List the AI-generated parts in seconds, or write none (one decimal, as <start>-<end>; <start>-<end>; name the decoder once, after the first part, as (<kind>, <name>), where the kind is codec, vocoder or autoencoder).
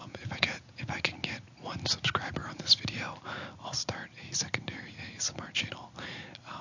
0.0-0.8 (vocoder, Vocos)